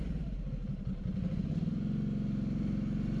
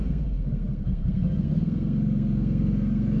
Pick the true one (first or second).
first